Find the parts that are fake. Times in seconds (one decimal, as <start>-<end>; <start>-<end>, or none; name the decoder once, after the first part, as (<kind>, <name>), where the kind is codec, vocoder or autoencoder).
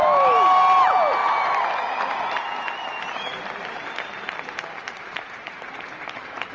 0.0-0.6 (vocoder, BigVGAN v2); 1.2-2.4; 3.3-6.5